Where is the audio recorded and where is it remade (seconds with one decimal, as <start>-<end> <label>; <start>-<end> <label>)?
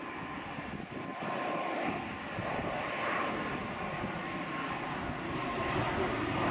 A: 0.0-6.5 recorded